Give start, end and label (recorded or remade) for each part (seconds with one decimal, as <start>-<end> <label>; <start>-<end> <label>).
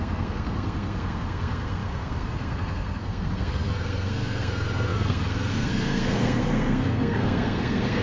0.0-8.0 remade